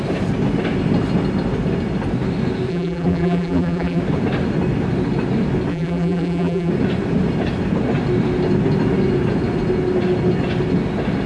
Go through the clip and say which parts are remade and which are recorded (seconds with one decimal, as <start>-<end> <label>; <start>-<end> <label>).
0.0-2.7 recorded; 2.7-4.0 remade; 4.0-5.7 recorded; 5.7-6.7 remade; 6.7-11.3 recorded